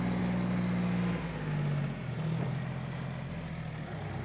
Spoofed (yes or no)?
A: no